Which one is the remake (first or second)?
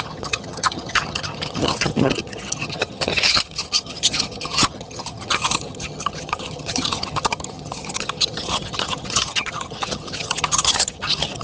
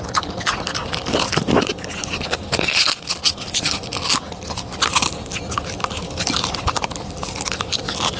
first